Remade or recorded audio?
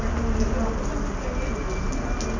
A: recorded